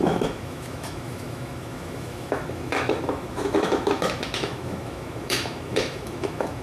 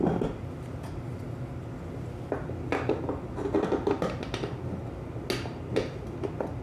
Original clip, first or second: second